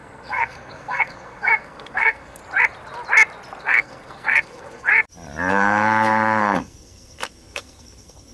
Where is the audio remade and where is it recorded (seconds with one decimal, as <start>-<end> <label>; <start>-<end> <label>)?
0.0-2.4 remade; 2.4-3.6 recorded; 3.6-4.9 remade; 4.9-5.5 recorded; 5.5-8.3 remade